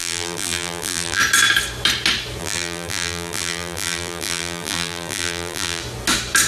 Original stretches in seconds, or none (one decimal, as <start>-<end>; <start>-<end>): 1.2-2.4; 5.8-6.5